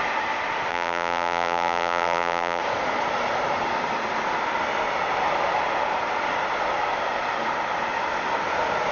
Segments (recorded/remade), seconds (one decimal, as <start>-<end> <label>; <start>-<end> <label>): 0.0-0.7 recorded; 0.7-2.6 remade; 2.6-8.9 recorded